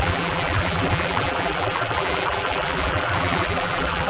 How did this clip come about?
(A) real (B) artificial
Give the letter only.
B